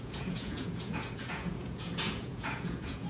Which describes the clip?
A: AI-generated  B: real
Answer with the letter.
A